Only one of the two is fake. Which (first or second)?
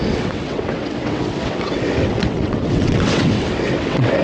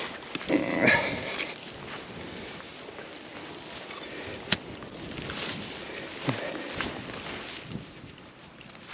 first